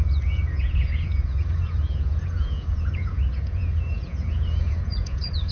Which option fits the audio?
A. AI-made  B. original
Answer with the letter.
A